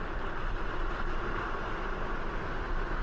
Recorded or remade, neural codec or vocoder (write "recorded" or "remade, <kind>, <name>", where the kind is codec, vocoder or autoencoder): recorded